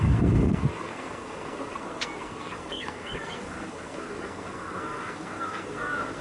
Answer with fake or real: fake